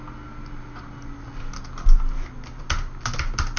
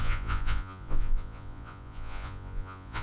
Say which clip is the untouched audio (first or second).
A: first